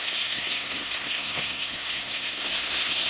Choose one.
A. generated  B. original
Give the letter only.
A